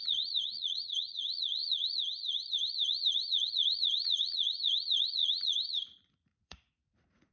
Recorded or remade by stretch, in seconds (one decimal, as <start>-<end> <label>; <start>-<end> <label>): 0.0-7.3 remade